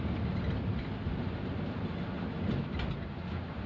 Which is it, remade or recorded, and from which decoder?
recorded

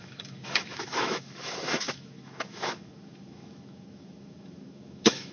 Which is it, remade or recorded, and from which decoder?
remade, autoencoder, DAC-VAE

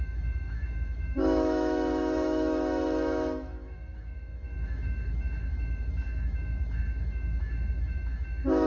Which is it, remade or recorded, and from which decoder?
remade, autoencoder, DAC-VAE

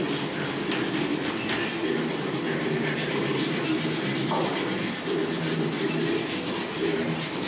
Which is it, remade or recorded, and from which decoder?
recorded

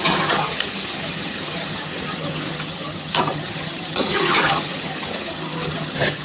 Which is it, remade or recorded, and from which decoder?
remade, vocoder, HiFi-GAN